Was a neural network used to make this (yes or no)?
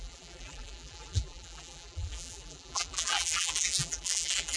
yes